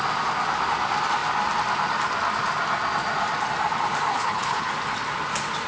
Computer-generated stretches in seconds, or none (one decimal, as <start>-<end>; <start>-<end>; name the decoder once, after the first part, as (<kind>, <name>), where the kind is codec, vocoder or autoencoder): 4.1-4.7 (codec, HILCodec)